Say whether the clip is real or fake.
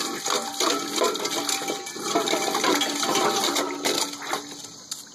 real